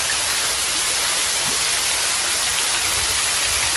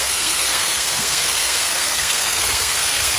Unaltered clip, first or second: first